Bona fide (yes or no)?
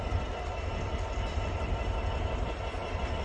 no